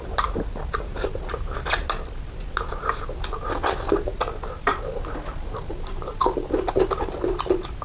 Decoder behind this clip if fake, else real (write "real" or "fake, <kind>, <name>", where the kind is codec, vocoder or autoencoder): real